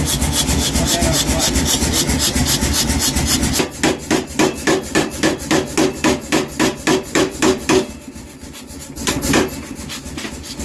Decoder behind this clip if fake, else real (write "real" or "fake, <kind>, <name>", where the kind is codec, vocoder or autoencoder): real